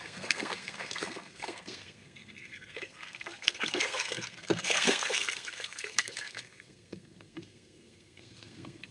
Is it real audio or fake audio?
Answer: fake